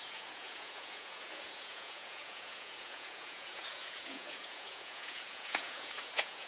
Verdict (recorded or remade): remade